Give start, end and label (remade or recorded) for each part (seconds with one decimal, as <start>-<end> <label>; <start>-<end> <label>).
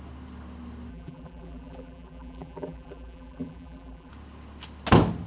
0.0-0.9 recorded; 0.9-4.1 remade; 4.1-5.3 recorded